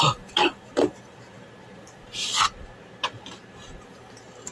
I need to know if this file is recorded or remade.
remade